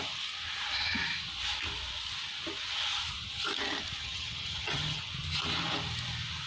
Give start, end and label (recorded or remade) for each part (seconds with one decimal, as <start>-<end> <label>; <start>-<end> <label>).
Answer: 0.0-4.0 recorded; 4.0-5.1 remade; 5.1-6.5 recorded